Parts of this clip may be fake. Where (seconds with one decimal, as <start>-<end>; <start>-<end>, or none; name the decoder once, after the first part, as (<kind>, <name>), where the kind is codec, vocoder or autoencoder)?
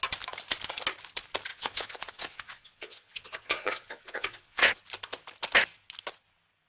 1.5-4.8 (vocoder, Vocos)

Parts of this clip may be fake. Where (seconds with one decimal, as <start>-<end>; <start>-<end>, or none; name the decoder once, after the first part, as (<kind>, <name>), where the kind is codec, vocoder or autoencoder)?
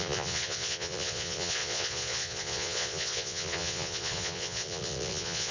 0.0-5.5 (vocoder, Vocos)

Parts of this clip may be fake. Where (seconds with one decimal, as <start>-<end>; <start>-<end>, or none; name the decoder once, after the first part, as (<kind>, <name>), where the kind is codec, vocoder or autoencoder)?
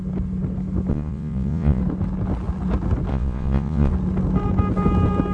0.9-1.8 (vocoder, Vocos); 3.1-3.9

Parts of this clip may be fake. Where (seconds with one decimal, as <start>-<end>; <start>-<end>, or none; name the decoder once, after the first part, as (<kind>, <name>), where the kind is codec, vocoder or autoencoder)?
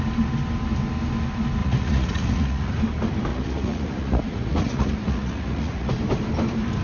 1.6-2.7 (vocoder, Vocos); 3.3-5.9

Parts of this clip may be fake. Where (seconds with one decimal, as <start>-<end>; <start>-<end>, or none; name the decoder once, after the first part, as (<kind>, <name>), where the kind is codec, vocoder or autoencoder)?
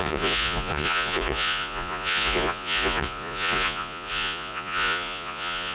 0.0-5.7 (vocoder, Vocos)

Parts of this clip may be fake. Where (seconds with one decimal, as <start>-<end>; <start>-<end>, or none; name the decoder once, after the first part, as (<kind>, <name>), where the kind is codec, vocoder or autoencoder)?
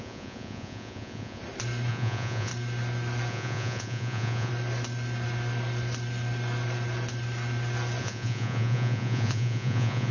0.0-1.4 (vocoder, Vocos); 1.9-2.5; 3.3-4.5; 8.0-10.1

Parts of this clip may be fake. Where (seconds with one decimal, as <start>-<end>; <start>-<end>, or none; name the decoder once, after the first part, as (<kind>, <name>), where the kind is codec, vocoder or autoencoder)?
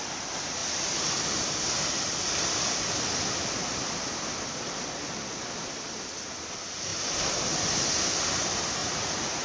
8.8-9.4 (vocoder, Vocos)